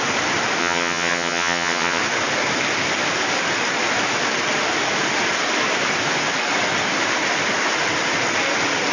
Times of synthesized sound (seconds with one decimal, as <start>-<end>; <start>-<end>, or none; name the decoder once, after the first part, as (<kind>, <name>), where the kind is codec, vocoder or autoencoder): 0.6-2.0 (vocoder, HiFi-GAN)

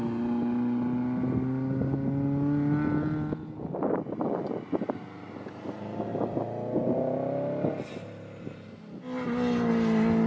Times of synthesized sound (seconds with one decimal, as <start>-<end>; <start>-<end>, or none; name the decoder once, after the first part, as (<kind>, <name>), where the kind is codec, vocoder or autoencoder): none

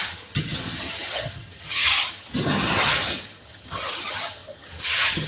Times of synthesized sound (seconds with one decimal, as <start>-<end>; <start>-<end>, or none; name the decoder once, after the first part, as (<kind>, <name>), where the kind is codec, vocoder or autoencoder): 0.0-5.3 (vocoder, HiFi-GAN)

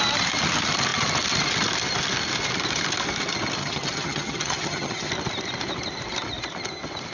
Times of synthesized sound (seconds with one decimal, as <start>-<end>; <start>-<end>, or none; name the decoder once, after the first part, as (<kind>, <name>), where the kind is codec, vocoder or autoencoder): 3.6-5.1 (vocoder, HiFi-GAN)

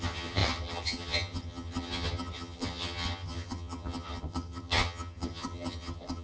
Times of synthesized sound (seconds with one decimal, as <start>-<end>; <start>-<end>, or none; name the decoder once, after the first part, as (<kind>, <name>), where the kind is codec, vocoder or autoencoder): 0.0-6.2 (vocoder, HiFi-GAN)

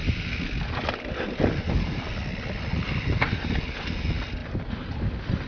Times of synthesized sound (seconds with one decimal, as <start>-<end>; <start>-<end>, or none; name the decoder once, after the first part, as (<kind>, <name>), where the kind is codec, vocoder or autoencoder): none